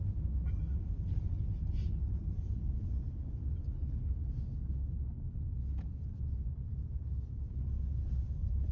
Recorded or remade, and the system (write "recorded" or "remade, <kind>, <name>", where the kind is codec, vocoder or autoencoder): recorded